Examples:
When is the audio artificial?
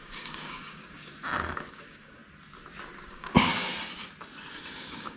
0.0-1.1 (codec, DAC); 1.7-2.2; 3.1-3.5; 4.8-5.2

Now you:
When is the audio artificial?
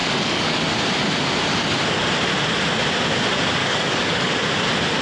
0.0-0.6 (codec, DAC); 3.6-4.3